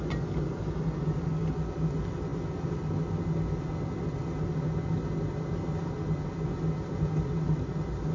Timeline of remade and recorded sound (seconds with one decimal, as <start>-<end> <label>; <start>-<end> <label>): 0.0-8.1 recorded